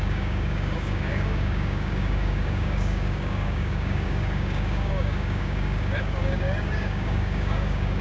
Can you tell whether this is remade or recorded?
remade